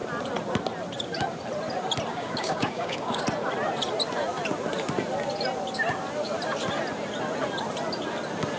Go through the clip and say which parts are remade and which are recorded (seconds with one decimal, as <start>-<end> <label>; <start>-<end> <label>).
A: 0.0-2.1 recorded; 2.1-3.2 remade; 3.2-8.6 recorded